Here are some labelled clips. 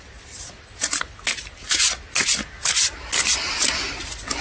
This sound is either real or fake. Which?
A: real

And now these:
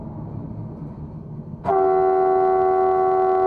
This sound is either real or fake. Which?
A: real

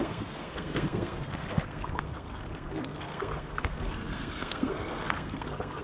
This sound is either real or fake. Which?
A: fake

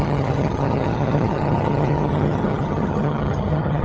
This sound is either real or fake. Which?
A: fake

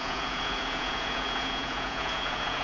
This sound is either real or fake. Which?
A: fake